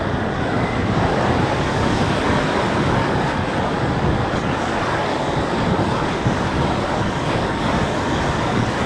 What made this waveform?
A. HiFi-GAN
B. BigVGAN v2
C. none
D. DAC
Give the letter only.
D